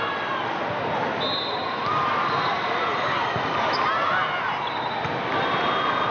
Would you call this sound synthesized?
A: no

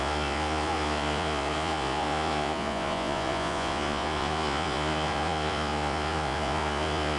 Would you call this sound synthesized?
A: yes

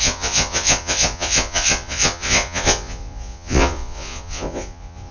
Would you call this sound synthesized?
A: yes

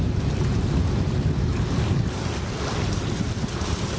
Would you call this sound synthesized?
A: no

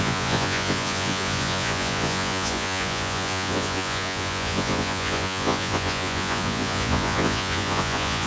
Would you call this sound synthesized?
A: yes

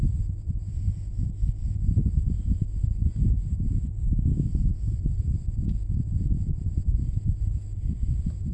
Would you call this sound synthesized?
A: no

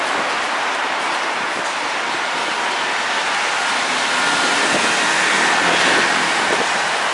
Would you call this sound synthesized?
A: no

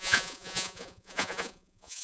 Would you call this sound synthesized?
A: yes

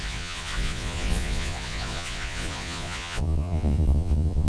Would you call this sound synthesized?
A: yes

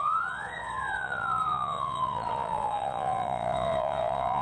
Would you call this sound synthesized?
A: yes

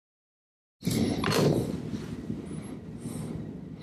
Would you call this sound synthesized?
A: no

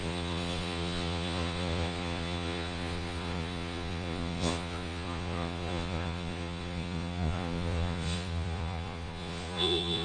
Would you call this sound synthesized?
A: yes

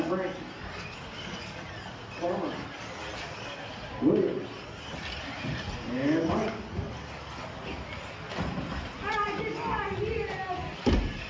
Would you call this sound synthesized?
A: no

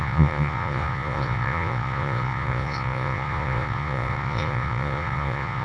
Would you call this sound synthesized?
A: yes